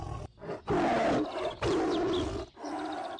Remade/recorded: recorded